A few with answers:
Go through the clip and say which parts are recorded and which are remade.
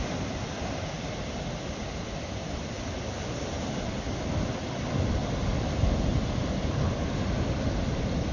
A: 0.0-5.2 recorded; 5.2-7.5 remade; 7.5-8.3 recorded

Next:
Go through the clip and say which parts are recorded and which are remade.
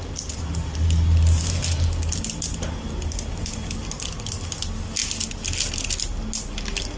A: 0.0-7.0 recorded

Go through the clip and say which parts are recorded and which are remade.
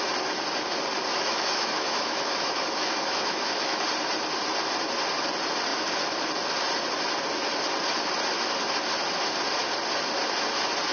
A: 0.0-1.1 recorded; 1.1-3.8 remade; 3.8-10.9 recorded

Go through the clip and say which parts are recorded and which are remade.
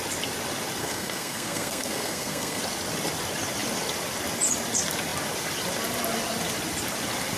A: 0.0-0.8 recorded; 0.8-2.6 remade; 2.6-7.4 recorded